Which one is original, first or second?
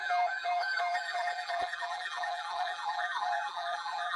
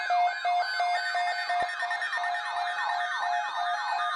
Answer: second